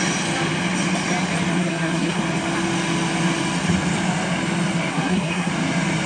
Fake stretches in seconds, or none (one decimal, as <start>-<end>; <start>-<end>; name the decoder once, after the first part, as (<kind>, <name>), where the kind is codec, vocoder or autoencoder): 1.6-2.2 (codec, SNAC); 4.9-5.5